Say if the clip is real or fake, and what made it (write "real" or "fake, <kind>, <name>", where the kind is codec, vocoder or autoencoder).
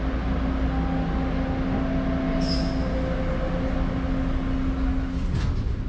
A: real